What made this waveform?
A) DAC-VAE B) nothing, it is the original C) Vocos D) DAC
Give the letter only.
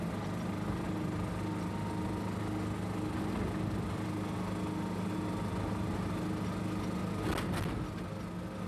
B